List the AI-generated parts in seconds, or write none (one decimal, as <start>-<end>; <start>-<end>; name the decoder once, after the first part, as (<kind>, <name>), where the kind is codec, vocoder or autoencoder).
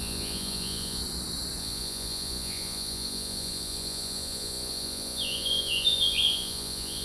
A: 0.0-1.0 (vocoder, Vocos); 1.6-7.0